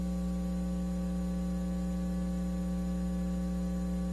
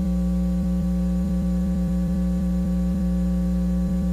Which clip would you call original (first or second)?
first